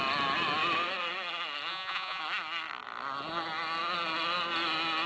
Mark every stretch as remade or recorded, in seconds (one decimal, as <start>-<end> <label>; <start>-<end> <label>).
0.0-1.7 recorded; 1.7-2.2 remade; 2.2-5.1 recorded